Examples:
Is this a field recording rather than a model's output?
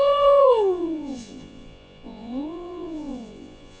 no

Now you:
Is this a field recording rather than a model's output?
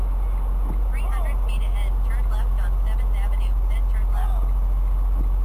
yes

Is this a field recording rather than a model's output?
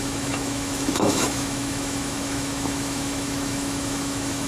no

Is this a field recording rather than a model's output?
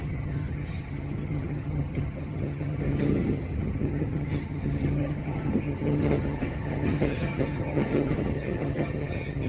no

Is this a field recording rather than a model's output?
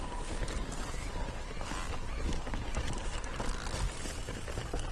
yes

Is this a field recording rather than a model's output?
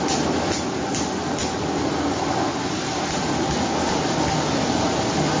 yes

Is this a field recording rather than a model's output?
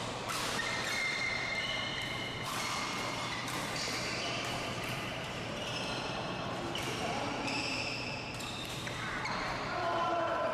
no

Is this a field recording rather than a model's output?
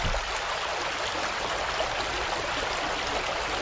yes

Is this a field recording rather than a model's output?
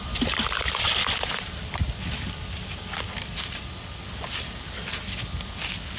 yes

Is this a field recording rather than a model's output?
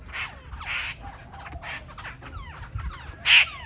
yes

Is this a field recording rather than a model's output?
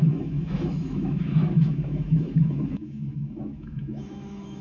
no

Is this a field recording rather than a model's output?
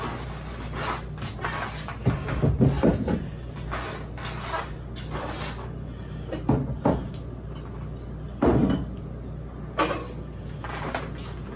yes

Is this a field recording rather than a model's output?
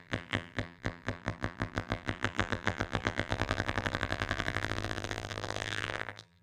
no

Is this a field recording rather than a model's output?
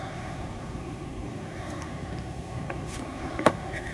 no